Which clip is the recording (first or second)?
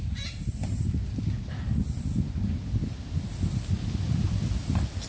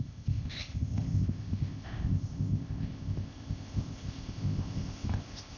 first